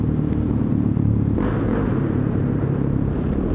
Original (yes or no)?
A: no